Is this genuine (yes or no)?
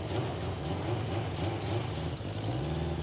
yes